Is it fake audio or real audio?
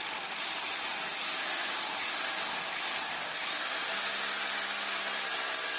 real